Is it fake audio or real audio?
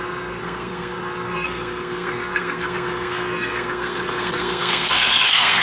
fake